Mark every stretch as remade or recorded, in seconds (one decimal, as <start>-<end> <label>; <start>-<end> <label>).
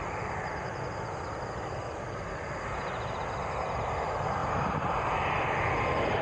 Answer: 0.0-6.2 recorded